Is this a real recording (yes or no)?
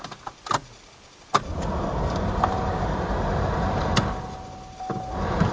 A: yes